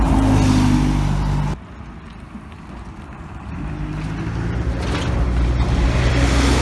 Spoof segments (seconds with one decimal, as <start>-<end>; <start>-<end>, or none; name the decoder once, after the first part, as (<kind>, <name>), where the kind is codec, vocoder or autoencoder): none